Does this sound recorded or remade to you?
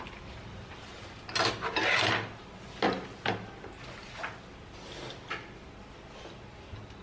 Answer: recorded